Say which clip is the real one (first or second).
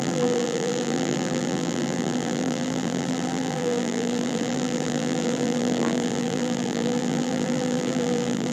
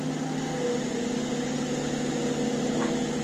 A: second